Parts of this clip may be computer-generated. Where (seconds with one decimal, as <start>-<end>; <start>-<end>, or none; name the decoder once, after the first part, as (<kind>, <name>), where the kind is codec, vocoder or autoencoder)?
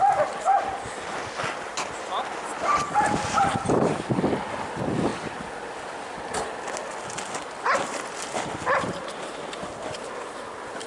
none